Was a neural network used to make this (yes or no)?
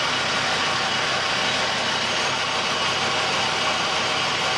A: no